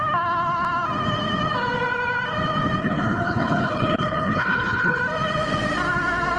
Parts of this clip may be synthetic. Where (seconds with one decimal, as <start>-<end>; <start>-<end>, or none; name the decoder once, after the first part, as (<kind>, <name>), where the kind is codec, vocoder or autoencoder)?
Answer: 2.8-5.0 (codec, HILCodec)